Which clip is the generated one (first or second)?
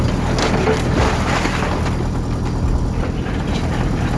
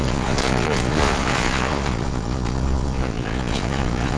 second